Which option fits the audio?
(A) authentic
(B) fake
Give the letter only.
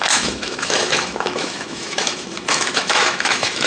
B